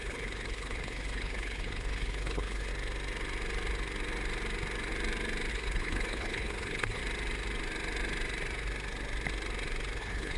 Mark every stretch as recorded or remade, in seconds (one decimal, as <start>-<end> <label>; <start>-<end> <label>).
0.0-2.7 remade; 2.7-5.5 recorded; 5.5-7.0 remade; 7.0-10.0 recorded; 10.0-10.4 remade